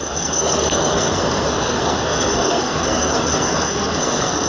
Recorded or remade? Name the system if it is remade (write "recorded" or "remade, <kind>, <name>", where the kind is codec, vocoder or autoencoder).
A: remade, codec, SNAC